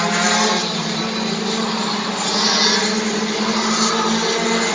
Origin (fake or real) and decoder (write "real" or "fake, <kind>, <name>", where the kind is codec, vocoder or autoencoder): real